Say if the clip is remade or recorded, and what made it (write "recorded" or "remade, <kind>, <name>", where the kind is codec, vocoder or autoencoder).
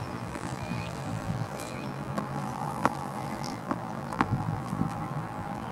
remade, vocoder, BigVGAN v2